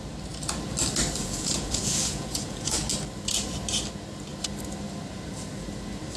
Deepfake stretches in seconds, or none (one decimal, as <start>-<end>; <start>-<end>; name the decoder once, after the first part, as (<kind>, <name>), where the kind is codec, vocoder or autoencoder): 1.2-2.9 (vocoder, Vocos)